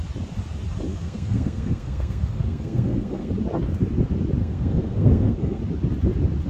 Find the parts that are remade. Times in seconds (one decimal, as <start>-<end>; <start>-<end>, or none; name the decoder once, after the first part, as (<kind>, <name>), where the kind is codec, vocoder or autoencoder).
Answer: 0.9-3.3 (codec, SNAC); 4.4-5.6